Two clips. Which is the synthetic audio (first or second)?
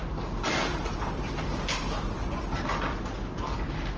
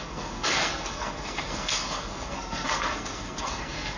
second